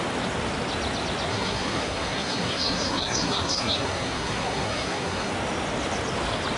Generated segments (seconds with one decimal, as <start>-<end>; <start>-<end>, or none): 1.3-5.3